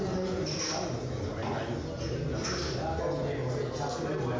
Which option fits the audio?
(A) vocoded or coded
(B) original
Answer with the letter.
B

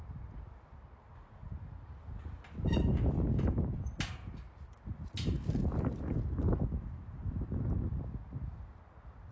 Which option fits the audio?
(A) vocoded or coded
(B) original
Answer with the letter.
B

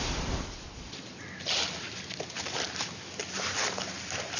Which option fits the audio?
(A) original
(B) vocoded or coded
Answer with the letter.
A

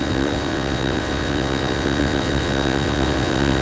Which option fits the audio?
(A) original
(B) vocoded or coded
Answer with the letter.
B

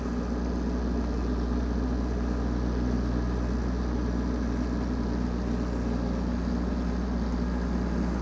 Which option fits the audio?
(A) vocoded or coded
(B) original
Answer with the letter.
B